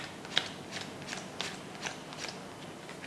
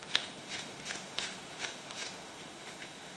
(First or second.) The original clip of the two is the first